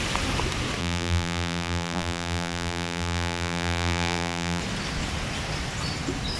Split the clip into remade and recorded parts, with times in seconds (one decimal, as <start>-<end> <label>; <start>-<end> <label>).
0.0-0.8 recorded; 0.8-4.6 remade; 4.6-6.4 recorded